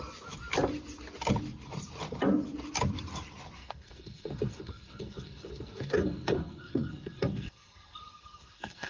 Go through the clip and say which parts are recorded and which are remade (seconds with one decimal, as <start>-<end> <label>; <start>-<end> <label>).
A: 0.0-3.6 recorded; 3.6-8.9 remade